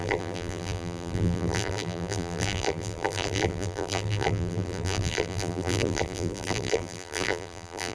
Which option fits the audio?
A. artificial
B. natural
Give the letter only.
A